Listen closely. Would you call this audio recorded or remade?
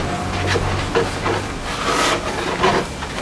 recorded